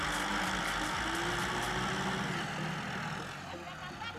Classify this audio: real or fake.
real